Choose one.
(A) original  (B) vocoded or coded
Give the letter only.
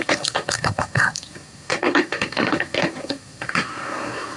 B